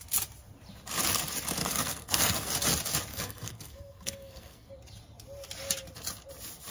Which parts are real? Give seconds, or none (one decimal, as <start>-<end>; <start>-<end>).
0.0-1.6; 2.5-3.1; 4.7-6.7